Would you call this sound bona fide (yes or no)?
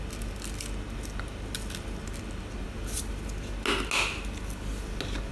yes